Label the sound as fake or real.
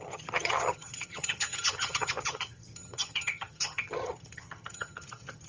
fake